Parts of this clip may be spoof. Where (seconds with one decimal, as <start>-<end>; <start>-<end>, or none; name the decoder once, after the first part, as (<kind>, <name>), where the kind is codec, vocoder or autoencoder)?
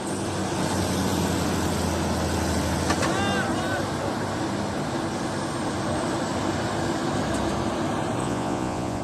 8.2-9.0 (vocoder, Vocos)